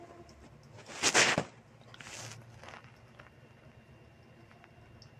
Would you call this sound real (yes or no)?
yes